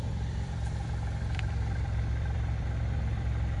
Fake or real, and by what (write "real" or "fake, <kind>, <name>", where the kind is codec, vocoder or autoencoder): fake, vocoder, BigVGAN v2